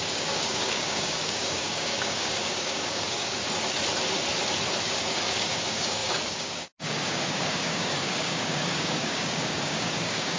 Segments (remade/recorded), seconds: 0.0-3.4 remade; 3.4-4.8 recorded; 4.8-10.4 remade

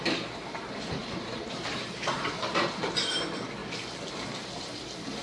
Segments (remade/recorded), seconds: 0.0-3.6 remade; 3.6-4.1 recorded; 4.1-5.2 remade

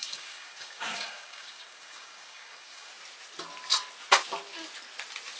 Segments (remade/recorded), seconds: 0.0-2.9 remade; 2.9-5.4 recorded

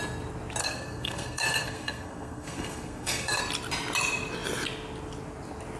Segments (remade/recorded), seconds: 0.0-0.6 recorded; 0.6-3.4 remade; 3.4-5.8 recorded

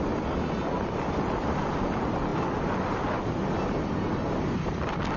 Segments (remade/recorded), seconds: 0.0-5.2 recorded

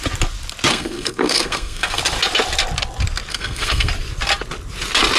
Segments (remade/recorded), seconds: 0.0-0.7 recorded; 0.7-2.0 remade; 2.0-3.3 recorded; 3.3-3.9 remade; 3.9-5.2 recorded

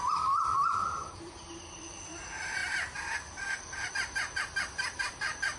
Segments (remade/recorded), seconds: 0.0-0.8 recorded; 0.8-2.1 remade; 2.1-2.6 recorded; 2.6-3.9 remade; 3.9-5.6 recorded

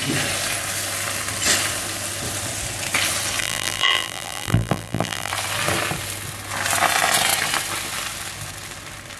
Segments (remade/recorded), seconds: 0.0-3.4 recorded; 3.4-5.3 remade; 5.3-9.2 recorded